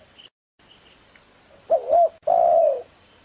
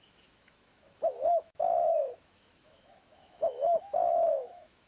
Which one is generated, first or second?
second